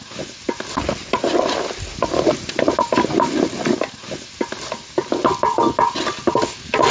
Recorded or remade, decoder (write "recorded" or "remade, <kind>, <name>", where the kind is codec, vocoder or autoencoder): recorded